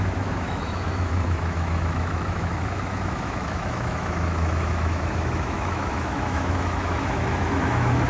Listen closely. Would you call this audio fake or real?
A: fake